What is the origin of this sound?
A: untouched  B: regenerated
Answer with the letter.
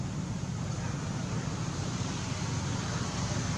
A